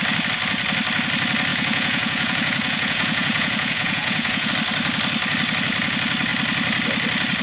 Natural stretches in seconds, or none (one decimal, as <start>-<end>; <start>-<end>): 0.0-1.5; 4.5-7.4